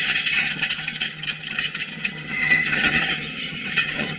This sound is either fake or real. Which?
fake